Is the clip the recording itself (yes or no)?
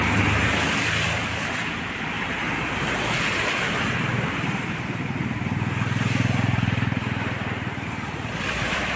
no